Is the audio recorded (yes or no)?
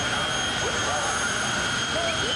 yes